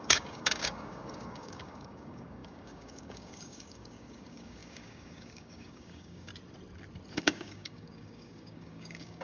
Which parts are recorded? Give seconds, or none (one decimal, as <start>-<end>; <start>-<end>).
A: 6.3-7.1